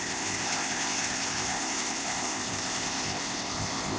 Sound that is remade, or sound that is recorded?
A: remade